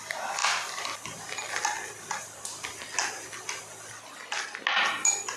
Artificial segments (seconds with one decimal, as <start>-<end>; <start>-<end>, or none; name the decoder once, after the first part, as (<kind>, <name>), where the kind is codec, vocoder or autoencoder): none